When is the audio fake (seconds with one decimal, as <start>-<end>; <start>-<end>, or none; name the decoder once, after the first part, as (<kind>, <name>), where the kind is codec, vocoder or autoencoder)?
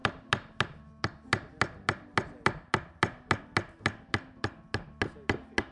none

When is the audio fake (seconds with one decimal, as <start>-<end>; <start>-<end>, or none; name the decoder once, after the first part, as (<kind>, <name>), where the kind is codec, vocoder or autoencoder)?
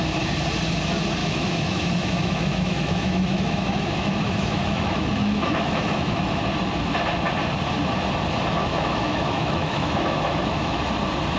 1.2-6.4 (autoencoder, DAC-VAE); 8.7-10.9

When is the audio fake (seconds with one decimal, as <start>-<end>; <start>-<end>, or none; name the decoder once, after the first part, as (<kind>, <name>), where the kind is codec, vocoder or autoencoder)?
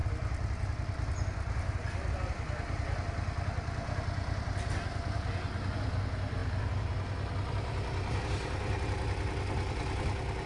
none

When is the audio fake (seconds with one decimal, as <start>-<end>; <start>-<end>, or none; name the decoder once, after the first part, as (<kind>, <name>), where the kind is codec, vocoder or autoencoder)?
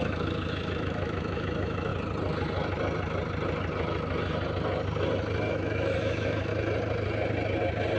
0.0-1.9 (autoencoder, DAC-VAE); 5.5-6.5